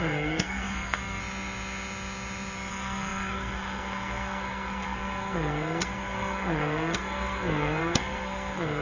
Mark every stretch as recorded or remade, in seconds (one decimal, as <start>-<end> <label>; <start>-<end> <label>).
0.0-1.2 remade; 1.2-2.7 recorded; 2.7-8.8 remade